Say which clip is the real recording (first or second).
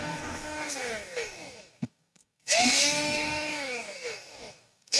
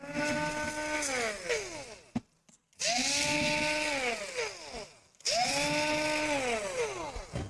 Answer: second